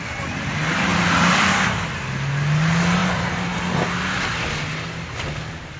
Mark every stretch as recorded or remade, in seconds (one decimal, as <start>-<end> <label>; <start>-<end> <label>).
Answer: 0.0-0.9 recorded; 0.9-1.5 remade; 1.5-3.0 recorded; 3.0-3.6 remade; 3.6-5.8 recorded